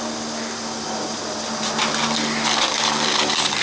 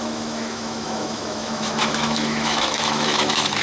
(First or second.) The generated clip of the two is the second